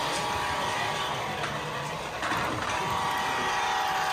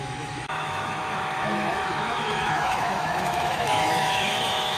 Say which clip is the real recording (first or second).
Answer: first